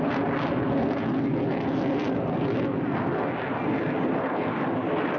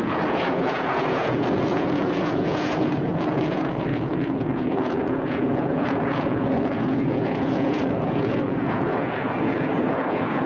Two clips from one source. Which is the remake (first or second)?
second